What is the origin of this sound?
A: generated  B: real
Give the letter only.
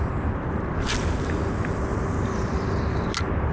B